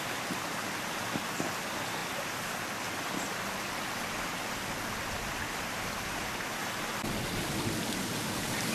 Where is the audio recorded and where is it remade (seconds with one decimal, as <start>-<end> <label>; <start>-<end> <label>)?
0.0-8.7 recorded